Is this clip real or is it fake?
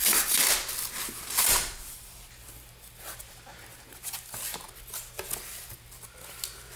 real